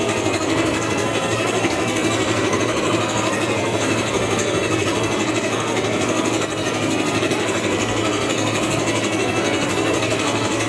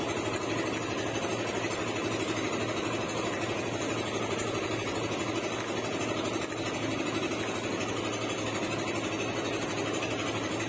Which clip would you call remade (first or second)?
first